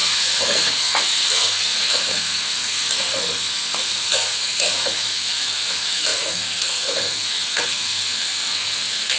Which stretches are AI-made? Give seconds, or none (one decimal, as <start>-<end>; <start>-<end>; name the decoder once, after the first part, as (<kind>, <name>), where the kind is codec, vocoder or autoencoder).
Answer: 0.0-9.2 (codec, SNAC)